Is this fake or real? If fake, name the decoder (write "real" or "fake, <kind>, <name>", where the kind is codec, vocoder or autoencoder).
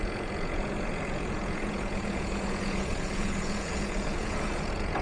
fake, vocoder, Vocos